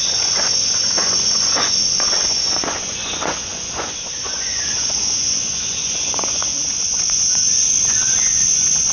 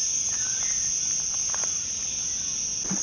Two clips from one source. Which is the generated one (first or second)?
first